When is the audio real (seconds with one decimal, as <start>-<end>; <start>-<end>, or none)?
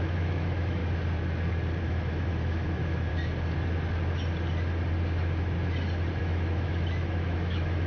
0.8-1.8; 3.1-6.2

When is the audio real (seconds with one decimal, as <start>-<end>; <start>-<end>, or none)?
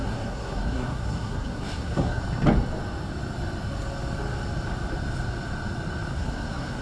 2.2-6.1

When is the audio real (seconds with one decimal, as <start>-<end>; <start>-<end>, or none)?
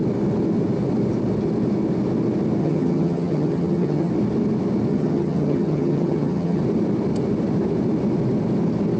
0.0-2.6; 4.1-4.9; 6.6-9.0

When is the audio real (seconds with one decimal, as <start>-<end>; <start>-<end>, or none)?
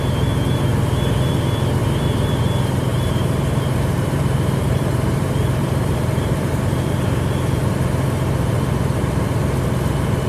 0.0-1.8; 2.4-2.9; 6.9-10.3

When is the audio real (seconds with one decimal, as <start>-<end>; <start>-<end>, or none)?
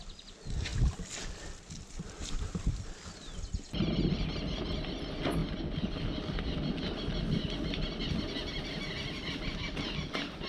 0.0-10.5